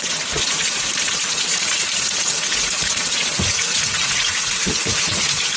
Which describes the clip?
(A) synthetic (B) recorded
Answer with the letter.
A